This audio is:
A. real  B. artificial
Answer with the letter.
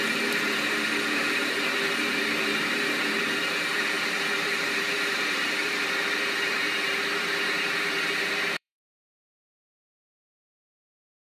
B